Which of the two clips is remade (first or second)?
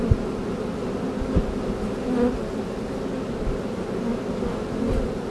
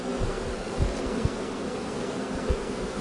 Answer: second